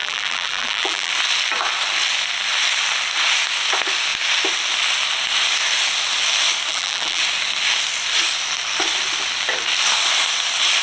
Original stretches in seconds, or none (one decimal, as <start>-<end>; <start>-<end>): 1.1-6.7; 7.2-10.8